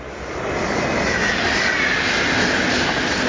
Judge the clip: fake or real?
real